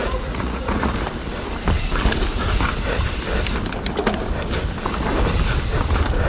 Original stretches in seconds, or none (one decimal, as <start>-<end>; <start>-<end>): 0.9-6.3